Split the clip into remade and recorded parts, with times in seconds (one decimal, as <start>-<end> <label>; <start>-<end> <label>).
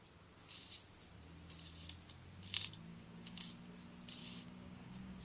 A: 0.0-2.9 recorded; 2.9-3.5 remade; 3.5-4.2 recorded; 4.2-5.2 remade